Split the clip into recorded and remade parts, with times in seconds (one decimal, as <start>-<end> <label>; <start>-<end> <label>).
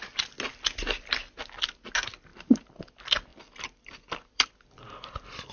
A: 0.0-3.3 recorded; 3.3-5.5 remade